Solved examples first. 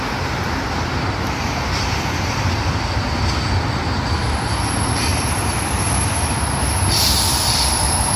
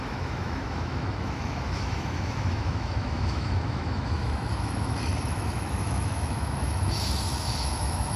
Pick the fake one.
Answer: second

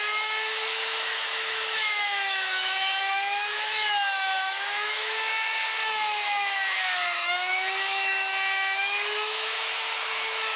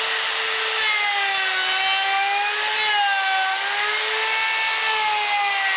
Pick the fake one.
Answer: first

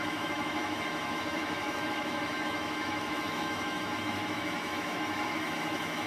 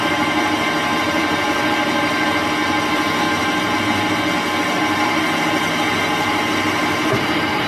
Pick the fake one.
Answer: first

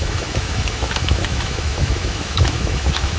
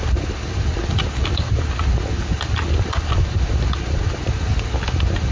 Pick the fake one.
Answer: first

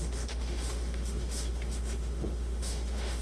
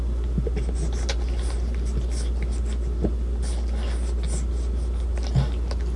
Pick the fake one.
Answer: first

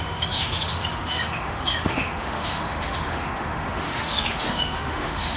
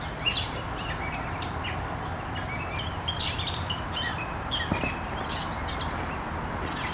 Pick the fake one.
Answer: first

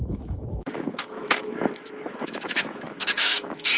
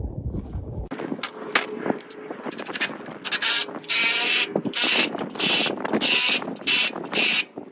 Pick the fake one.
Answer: first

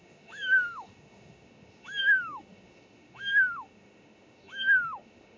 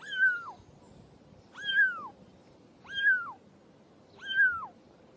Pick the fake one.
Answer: first